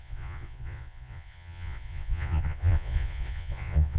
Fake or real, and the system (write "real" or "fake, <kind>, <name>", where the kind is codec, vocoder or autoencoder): fake, vocoder, Vocos